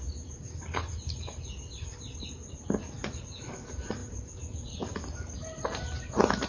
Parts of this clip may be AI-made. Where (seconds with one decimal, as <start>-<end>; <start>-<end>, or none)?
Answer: none